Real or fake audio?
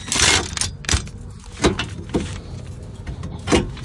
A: real